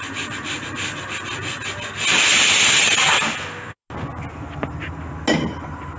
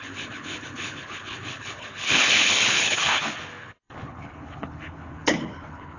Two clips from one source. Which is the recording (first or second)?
first